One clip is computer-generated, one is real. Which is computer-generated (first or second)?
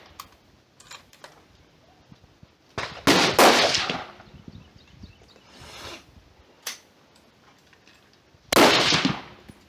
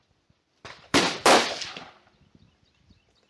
second